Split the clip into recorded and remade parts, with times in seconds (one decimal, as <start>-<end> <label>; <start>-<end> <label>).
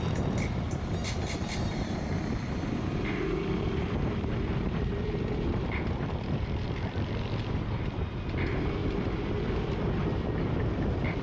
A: 0.0-2.9 recorded; 2.9-6.7 remade; 6.7-11.2 recorded